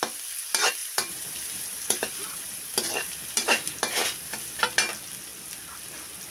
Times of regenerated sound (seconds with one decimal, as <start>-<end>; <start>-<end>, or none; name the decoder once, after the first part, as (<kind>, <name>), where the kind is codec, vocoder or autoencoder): 0.8-4.6 (vocoder, BigVGAN v2)